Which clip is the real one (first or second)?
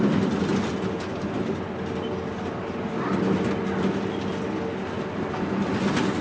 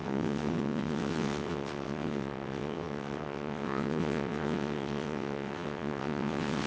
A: first